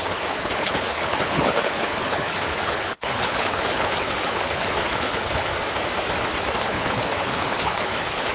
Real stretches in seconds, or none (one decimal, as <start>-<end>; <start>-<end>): 5.5-6.6